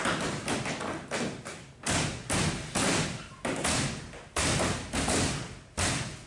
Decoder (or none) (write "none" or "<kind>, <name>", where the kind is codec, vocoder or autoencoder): none